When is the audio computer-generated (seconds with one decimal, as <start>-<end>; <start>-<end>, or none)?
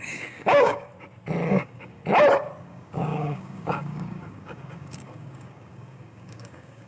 0.0-0.9; 1.5-2.0; 2.6-6.9